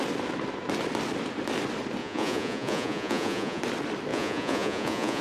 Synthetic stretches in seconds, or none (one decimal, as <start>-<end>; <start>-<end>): 2.0-3.6; 4.1-5.2